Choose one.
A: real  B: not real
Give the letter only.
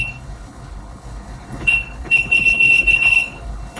B